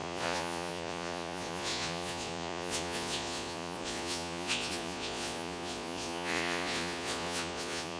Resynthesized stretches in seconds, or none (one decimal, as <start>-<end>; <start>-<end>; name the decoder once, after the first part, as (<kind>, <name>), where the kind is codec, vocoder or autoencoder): 0.0-8.0 (vocoder, Vocos)

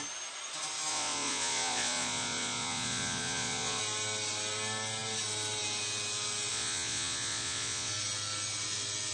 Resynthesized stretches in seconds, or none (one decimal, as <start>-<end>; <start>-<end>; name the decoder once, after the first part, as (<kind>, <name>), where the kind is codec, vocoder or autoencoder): 0.9-3.8 (vocoder, Vocos); 6.5-7.9

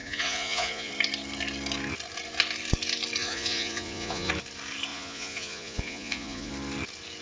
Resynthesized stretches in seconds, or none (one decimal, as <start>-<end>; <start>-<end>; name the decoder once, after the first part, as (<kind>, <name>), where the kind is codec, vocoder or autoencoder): 0.0-0.9 (vocoder, Vocos); 3.2-4.3; 4.9-6.5

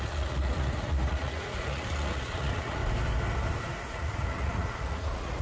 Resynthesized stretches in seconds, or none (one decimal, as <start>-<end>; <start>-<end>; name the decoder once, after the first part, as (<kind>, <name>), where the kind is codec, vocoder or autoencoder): 0.0-2.8 (vocoder, Vocos); 3.8-5.4

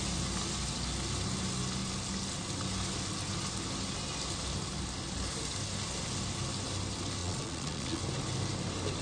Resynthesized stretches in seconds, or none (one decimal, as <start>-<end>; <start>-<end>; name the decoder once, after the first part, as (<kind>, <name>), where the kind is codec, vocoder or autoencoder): 7.2-8.0 (vocoder, Vocos)